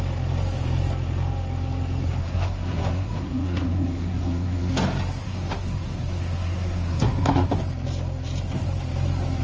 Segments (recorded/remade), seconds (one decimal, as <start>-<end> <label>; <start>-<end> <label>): 0.0-2.2 recorded; 2.2-4.7 remade; 4.7-5.2 recorded; 5.2-7.6 remade; 7.6-9.4 recorded